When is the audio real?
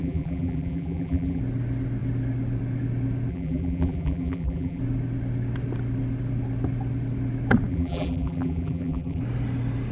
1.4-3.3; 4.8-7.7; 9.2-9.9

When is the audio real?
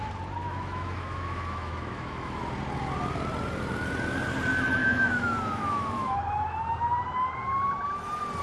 0.0-0.4; 2.4-4.8; 6.6-8.4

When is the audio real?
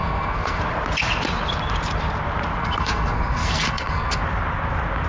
0.6-2.6; 4.2-5.1